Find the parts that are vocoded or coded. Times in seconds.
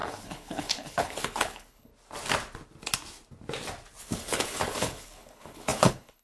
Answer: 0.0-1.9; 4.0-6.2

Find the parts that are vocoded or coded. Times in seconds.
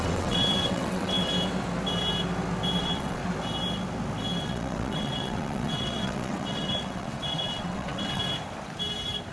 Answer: 0.0-1.3; 2.8-3.2; 4.4-8.2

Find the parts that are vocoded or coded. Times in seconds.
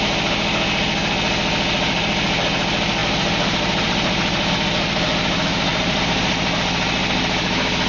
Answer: 3.0-4.5; 5.7-6.3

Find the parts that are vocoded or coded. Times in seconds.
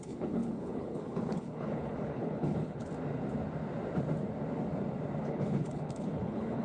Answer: 0.0-2.9; 5.2-6.6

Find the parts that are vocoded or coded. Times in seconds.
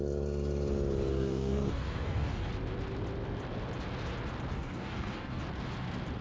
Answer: 1.1-2.5; 4.5-5.4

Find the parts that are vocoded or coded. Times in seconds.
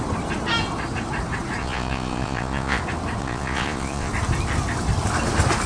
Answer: 1.6-2.8; 3.2-4.1